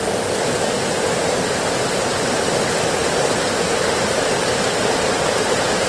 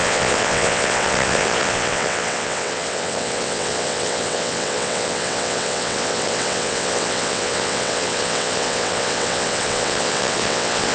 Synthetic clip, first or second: second